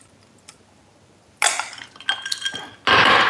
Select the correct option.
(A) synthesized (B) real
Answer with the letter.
B